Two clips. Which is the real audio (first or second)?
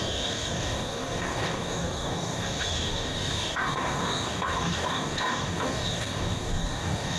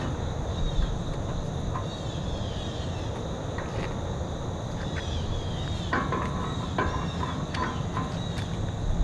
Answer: second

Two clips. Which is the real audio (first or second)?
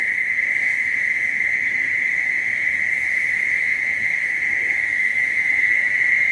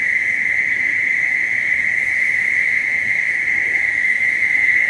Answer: first